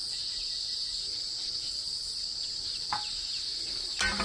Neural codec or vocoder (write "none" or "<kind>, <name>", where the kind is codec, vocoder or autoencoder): none